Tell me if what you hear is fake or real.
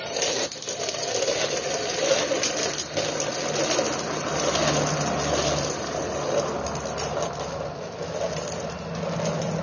real